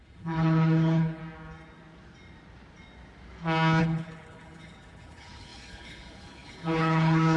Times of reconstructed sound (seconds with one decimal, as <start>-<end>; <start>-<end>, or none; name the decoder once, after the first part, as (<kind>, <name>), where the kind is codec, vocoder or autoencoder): 0.0-1.2 (codec, HILCodec); 3.8-7.4